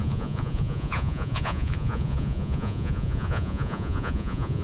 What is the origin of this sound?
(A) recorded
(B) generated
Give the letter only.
B